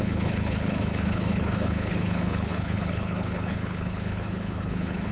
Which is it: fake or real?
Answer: fake